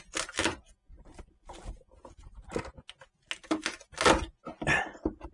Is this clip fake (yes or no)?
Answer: no